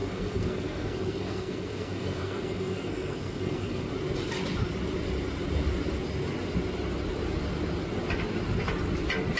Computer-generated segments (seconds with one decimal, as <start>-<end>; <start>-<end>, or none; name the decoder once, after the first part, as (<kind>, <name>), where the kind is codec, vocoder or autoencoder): 0.0-3.9 (codec, SNAC)